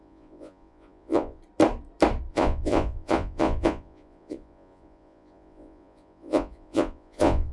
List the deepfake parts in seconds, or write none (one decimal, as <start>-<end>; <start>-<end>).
0.0-1.4; 2.3-7.5